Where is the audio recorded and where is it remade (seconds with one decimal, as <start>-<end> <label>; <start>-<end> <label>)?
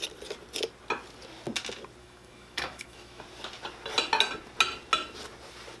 0.0-2.0 recorded; 2.0-3.2 remade; 3.2-5.8 recorded